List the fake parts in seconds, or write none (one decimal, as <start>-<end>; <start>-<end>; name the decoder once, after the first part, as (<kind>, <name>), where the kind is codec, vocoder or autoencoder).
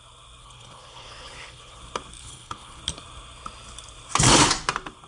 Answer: 0.4-1.8 (codec, HILCodec); 2.2-2.8